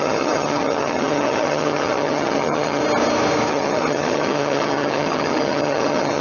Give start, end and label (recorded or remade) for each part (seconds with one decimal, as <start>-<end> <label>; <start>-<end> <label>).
0.0-2.8 remade; 2.8-3.5 recorded; 3.5-6.2 remade